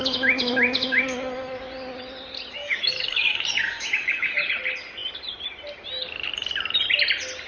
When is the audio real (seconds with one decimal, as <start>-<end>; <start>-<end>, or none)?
1.7-2.6; 4.5-7.5